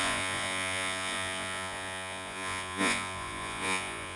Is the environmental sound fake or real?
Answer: fake